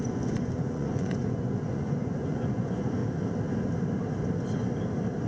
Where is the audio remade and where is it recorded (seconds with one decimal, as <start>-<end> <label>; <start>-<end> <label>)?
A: 0.0-3.0 remade; 3.0-5.3 recorded